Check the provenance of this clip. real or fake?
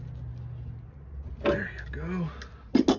real